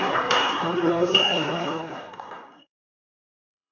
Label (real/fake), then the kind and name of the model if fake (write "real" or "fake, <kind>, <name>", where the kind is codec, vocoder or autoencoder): fake, codec, SNAC